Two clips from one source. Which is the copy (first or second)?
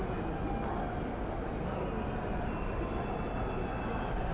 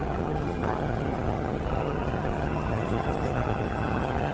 second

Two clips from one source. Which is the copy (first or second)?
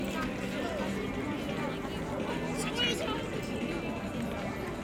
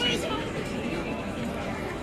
second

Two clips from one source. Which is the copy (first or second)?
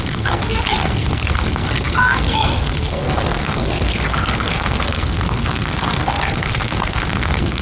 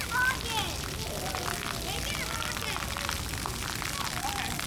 first